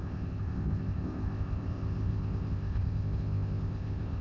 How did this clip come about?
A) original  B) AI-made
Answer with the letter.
B